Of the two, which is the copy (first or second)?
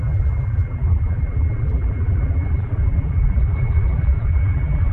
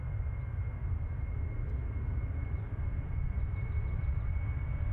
first